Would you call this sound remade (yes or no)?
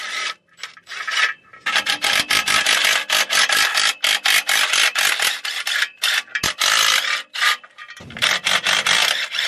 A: no